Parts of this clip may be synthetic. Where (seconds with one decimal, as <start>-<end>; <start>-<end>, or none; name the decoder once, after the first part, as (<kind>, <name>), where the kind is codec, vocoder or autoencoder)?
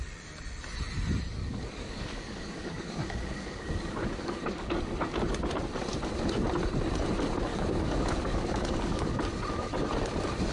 1.4-4.8 (codec, DAC); 7.5-9.3